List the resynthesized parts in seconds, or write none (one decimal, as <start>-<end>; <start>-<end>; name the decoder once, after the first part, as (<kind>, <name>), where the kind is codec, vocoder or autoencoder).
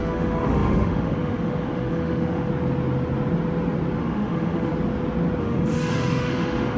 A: 0.0-2.5 (autoencoder, DAC-VAE); 4.0-4.7; 5.4-6.8